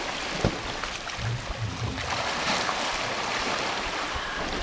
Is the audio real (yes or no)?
yes